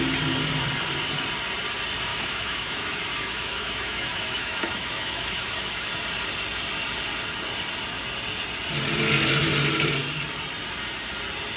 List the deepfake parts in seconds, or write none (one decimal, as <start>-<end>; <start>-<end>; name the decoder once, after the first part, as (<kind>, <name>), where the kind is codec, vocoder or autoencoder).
2.1-5.9 (autoencoder, DAC-VAE)

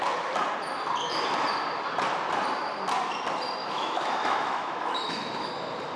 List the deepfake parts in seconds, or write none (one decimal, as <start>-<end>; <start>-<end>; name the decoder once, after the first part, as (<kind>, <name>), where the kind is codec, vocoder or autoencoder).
3.6-5.5 (autoencoder, DAC-VAE)

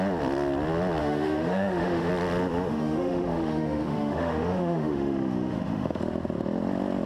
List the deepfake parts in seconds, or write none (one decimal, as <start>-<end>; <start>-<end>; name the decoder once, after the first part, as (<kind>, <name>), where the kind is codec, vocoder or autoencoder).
1.0-2.1 (autoencoder, DAC-VAE); 2.7-6.0